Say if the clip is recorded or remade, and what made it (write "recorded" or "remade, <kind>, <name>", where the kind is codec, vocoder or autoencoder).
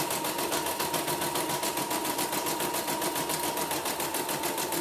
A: recorded